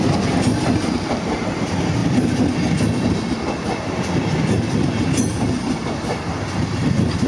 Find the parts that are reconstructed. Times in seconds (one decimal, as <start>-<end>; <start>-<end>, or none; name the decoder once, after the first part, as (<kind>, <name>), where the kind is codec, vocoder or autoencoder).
none